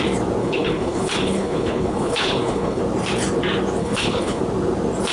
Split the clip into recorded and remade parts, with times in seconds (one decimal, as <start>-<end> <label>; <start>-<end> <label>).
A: 0.0-0.4 recorded; 0.4-2.8 remade; 2.8-3.8 recorded; 3.8-4.4 remade; 4.4-5.1 recorded